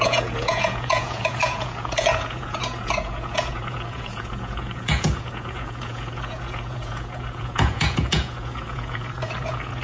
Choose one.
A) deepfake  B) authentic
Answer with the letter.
A